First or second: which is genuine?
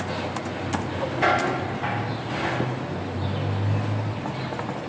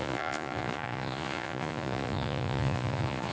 first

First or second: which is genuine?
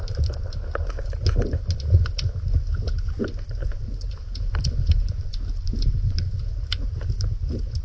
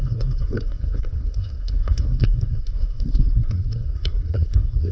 first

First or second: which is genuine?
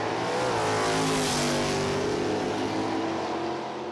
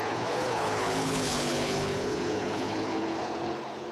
first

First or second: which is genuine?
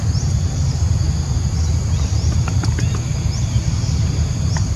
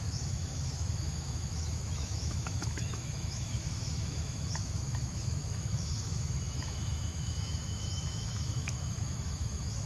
first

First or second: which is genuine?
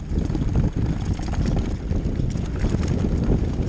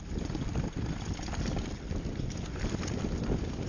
first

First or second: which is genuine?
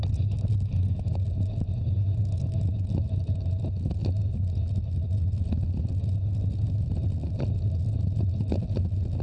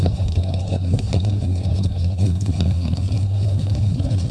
first